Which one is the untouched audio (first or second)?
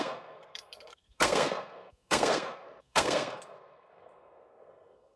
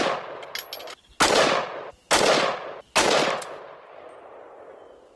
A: second